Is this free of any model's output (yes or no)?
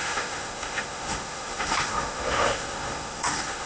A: no